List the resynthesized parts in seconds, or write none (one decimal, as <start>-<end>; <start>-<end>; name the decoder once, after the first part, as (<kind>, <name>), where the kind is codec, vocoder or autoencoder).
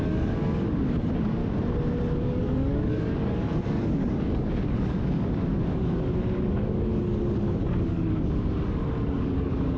0.0-1.4 (codec, DAC); 2.2-9.8